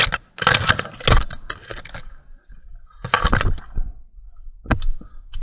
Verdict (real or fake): real